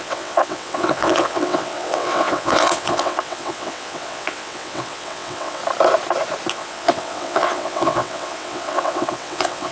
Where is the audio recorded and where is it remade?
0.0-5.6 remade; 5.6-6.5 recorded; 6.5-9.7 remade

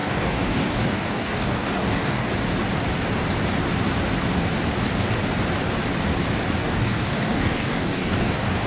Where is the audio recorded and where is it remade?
0.0-2.3 remade; 2.3-6.6 recorded; 6.6-8.7 remade